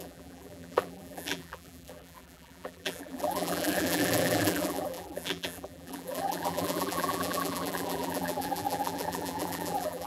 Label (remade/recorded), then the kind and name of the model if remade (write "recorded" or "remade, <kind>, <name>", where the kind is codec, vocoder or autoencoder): remade, vocoder, BigVGAN v2